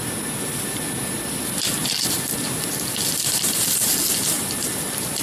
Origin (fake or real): real